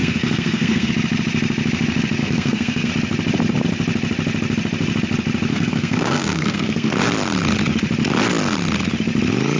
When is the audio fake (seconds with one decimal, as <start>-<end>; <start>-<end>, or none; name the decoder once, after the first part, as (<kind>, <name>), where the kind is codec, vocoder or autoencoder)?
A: 0.0-0.9 (codec, SNAC); 2.2-2.9; 5.5-6.9